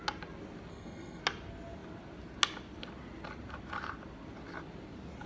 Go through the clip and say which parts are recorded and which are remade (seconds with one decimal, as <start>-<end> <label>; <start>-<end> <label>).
0.0-0.7 recorded; 0.7-1.2 remade; 1.2-5.3 recorded